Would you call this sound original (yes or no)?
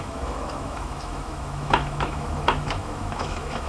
no